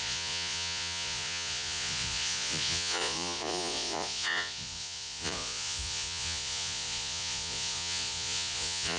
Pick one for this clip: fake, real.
fake